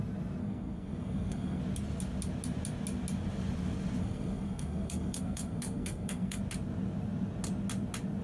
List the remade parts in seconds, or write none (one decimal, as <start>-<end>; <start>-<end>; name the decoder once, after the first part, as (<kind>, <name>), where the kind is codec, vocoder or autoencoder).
0.4-1.6 (codec, SNAC); 4.0-6.4